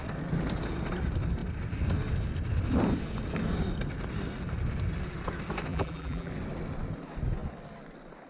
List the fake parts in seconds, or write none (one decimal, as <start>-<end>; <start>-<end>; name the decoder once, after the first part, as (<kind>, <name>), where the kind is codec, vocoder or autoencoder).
5.7-6.3 (vocoder, BigVGAN v2)